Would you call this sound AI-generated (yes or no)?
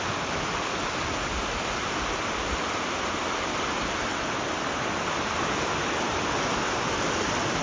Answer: no